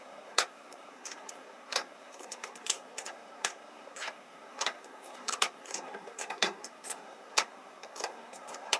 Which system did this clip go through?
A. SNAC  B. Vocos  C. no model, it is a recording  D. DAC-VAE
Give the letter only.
A